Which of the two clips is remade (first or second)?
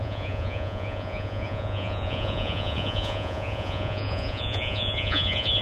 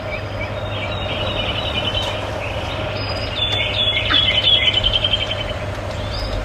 first